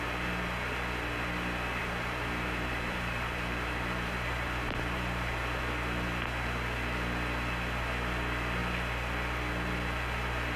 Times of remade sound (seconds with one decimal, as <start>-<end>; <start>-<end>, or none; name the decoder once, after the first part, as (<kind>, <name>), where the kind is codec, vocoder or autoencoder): 1.8-5.6 (vocoder, BigVGAN v2)